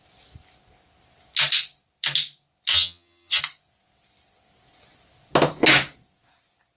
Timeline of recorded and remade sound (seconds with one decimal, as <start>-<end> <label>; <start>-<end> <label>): 0.0-2.7 recorded; 2.7-3.4 remade; 3.4-6.8 recorded